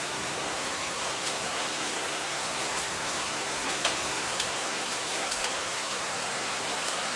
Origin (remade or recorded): remade